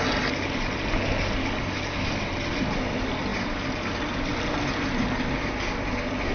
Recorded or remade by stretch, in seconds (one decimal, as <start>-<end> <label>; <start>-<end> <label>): 0.0-1.4 recorded; 1.4-2.1 remade; 2.1-6.3 recorded